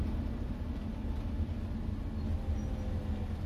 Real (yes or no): yes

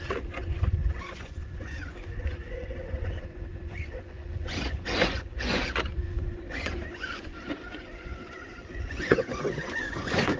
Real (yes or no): no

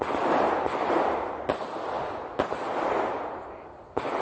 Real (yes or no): yes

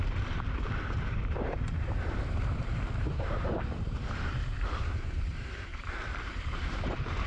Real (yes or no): no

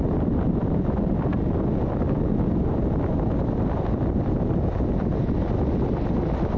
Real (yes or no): yes